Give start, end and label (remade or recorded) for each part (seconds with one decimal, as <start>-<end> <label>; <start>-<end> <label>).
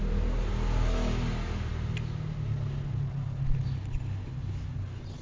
0.0-5.2 recorded